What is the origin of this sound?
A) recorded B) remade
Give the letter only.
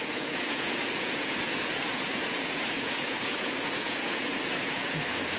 B